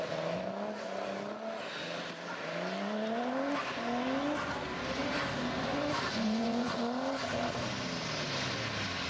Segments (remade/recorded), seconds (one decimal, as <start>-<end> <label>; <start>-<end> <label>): 0.0-6.1 recorded; 6.1-6.8 remade; 6.8-9.1 recorded